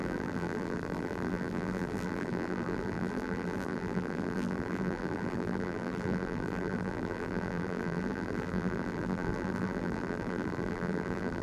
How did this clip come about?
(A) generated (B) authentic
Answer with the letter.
A